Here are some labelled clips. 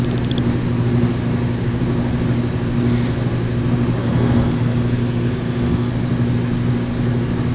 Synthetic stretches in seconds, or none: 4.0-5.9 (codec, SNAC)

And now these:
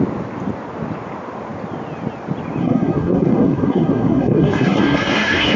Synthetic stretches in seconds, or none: 2.6-5.6 (codec, SNAC)

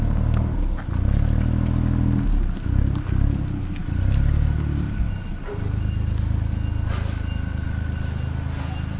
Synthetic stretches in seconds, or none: none

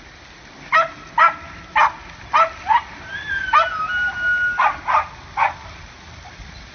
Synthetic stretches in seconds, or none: none

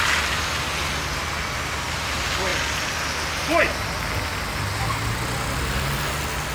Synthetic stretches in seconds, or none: none

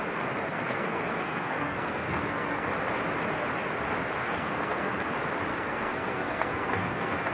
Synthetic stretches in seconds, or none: 0.5-2.7 (codec, SNAC); 4.2-5.1; 5.5-7.3

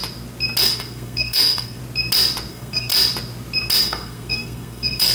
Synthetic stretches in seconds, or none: 0.6-1.8 (codec, SNAC); 2.5-2.9; 3.8-5.1

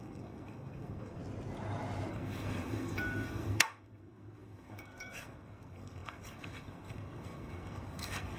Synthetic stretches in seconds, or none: 0.0-1.2 (codec, SNAC); 2.1-8.4